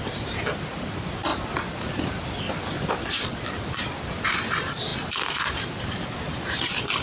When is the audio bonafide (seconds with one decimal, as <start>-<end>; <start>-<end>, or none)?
0.0-7.0